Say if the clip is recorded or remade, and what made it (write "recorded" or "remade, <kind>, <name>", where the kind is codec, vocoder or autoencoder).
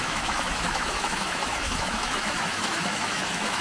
remade, autoencoder, DAC-VAE